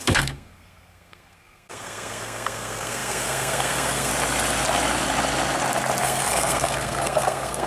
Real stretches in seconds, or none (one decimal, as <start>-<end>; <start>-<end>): 4.1-6.0